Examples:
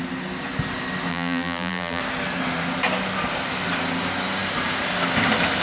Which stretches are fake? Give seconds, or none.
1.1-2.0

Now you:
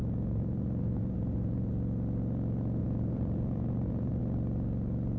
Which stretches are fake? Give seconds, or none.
0.0-1.7; 2.8-4.2

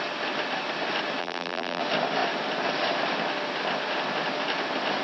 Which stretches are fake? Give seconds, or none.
1.2-1.8

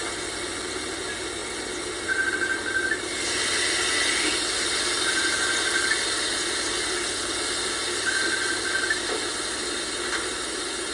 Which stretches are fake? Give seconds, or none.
none

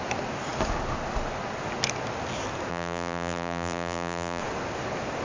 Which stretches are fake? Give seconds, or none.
2.7-4.4

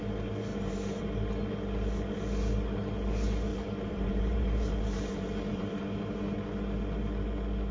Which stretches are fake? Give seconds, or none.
0.5-1.0; 3.5-5.8

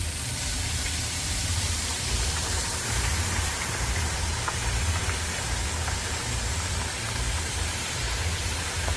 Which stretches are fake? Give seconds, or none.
0.0-4.3; 7.3-9.0